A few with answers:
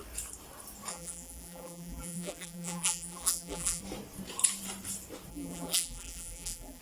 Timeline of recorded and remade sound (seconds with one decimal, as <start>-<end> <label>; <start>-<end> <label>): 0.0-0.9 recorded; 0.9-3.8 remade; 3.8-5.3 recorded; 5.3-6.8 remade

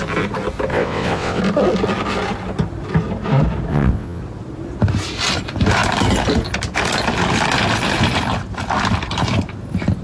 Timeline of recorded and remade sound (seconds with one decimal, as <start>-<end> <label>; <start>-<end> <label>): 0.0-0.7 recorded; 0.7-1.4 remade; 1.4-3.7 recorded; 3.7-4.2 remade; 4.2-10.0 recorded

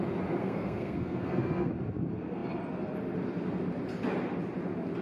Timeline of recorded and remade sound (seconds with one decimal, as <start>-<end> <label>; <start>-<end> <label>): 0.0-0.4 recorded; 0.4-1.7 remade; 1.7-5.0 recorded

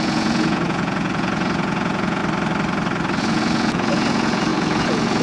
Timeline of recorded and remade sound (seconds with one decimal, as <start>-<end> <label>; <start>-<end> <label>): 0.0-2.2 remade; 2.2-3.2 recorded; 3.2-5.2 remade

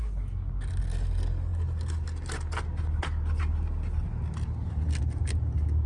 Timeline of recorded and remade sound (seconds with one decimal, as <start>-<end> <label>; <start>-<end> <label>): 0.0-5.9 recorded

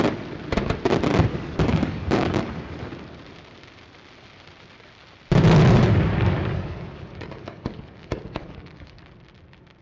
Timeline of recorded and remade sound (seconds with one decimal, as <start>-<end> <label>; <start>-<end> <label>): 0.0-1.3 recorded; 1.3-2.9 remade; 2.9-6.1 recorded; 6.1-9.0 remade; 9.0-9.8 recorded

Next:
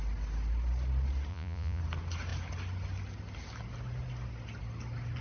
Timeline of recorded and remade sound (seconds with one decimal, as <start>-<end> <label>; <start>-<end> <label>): 0.0-1.3 recorded; 1.3-1.8 remade; 1.8-5.2 recorded